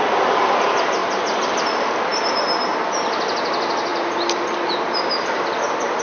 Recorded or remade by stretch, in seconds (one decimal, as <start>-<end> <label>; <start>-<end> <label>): 0.0-6.0 recorded

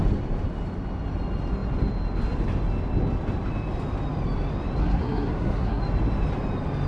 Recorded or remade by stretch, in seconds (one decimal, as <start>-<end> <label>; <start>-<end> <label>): 0.0-4.8 recorded; 4.8-5.8 remade; 5.8-6.9 recorded

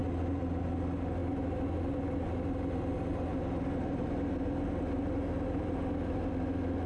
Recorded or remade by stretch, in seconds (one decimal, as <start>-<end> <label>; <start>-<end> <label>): 0.0-6.9 recorded

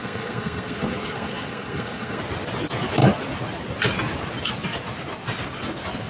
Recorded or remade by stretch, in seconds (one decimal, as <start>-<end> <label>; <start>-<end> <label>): 0.0-2.2 remade; 2.2-6.1 recorded

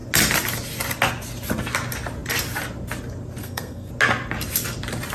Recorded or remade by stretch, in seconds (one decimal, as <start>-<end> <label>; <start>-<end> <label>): 0.0-3.4 recorded; 3.4-3.9 remade; 3.9-5.1 recorded

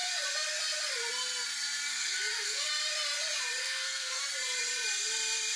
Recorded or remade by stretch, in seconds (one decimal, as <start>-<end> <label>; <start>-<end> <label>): 0.0-1.9 recorded; 1.9-2.7 remade; 2.7-3.6 recorded; 3.6-4.2 remade; 4.2-5.6 recorded

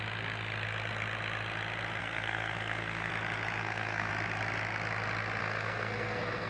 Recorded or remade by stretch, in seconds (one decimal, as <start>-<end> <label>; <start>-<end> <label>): 0.0-2.0 recorded; 2.0-3.1 remade; 3.1-3.6 recorded; 3.6-4.1 remade; 4.1-5.4 recorded; 5.4-6.5 remade

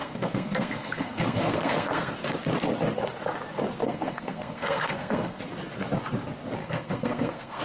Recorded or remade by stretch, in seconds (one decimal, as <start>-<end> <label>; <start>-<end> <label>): 0.0-2.1 remade; 2.1-3.8 recorded; 3.8-5.4 remade; 5.4-6.6 recorded; 6.6-7.6 remade